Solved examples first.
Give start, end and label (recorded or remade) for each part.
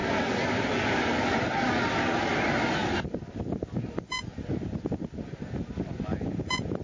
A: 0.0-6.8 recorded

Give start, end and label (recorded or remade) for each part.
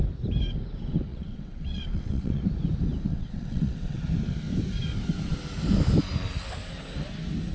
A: 0.0-1.1 recorded; 1.1-2.4 remade; 2.4-3.1 recorded; 3.1-4.0 remade; 4.0-7.5 recorded